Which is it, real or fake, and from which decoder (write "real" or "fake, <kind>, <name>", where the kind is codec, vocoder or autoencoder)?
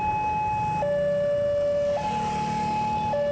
real